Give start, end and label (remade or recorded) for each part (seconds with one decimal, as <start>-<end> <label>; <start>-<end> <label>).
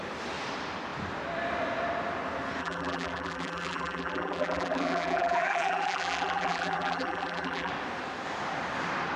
0.0-2.6 recorded; 2.6-7.7 remade; 7.7-9.2 recorded